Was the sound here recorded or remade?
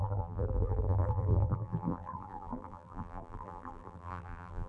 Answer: remade